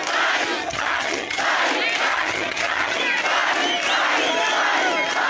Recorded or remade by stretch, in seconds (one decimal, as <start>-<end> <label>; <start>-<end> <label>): 0.0-0.6 recorded; 0.6-1.4 remade; 1.4-2.1 recorded; 2.1-3.0 remade; 3.0-5.3 recorded